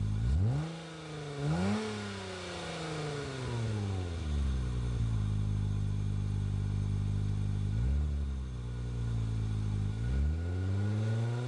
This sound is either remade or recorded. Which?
recorded